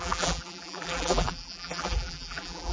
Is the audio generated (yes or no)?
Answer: yes